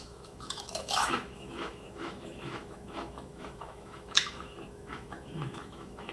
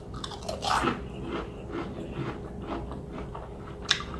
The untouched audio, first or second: second